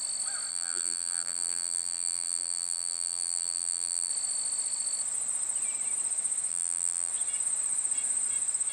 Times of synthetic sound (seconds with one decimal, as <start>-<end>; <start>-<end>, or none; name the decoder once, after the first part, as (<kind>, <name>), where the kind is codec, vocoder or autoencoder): 0.5-4.1 (vocoder, BigVGAN v2); 6.5-7.1